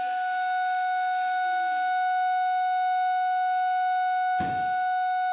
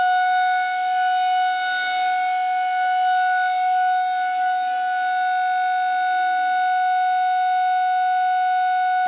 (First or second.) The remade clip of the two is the first